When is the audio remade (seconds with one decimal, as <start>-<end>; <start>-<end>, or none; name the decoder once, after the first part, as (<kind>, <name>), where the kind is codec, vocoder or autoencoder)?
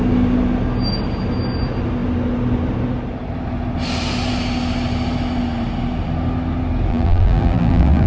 6.9-8.1 (vocoder, BigVGAN v2)